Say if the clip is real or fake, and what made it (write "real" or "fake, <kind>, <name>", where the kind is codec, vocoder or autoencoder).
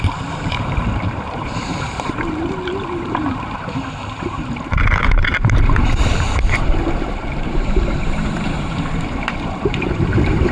fake, vocoder, BigVGAN v2